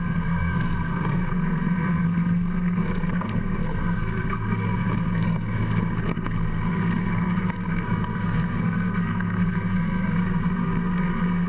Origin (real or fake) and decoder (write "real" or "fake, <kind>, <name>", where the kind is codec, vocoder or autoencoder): fake, codec, SNAC